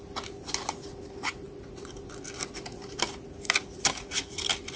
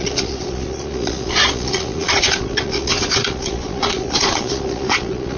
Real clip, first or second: first